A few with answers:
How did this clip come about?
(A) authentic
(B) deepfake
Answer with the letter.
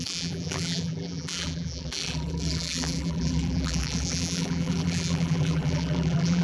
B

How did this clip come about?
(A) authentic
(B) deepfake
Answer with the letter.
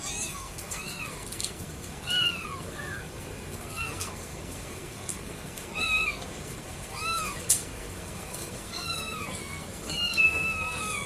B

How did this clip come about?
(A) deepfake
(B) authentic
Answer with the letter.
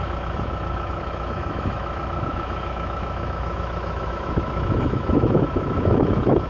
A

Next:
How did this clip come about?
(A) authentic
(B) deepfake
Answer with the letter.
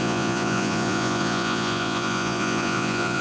B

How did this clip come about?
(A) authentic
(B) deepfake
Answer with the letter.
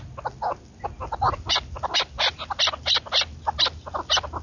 A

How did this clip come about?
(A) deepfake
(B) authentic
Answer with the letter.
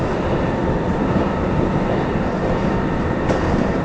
A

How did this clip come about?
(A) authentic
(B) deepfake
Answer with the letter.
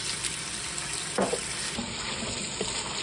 A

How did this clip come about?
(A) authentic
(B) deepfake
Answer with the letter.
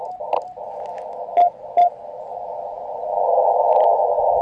A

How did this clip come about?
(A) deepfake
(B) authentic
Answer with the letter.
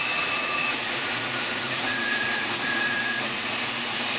A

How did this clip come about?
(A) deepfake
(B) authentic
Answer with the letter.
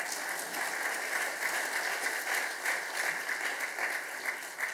B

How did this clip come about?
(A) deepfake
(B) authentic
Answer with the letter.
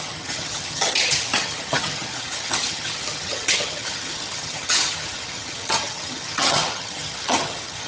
A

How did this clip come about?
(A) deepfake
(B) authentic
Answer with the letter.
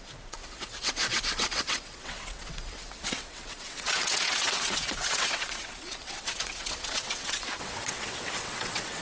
A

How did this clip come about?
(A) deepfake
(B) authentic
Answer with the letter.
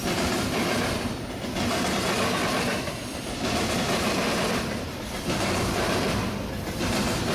A